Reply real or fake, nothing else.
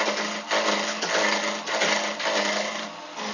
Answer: real